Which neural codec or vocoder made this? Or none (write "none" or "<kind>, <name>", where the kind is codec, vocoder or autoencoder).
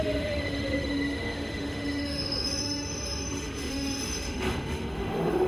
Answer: autoencoder, DAC-VAE